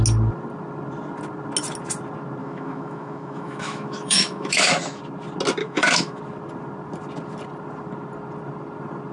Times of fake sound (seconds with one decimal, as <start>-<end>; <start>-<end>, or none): 2.4-5.0; 5.6-6.2